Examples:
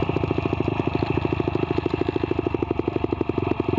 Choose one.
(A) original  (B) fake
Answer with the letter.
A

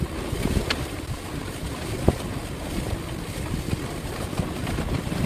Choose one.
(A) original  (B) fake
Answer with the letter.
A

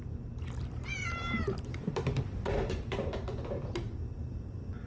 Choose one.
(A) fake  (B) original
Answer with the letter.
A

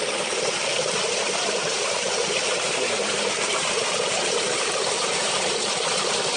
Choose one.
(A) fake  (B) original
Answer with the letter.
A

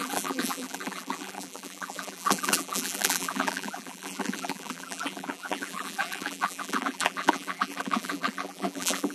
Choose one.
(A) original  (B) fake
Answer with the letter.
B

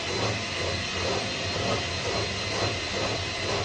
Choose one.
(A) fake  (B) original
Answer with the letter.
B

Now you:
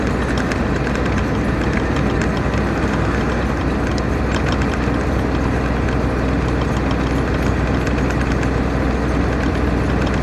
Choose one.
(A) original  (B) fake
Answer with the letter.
A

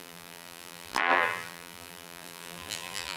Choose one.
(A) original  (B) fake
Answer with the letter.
B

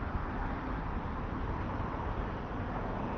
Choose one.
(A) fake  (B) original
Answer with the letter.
B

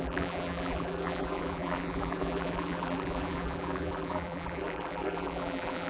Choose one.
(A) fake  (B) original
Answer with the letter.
A